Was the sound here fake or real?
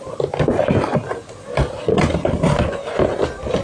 real